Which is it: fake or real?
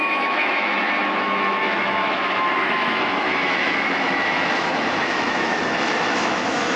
fake